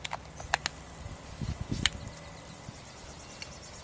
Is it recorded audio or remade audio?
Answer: recorded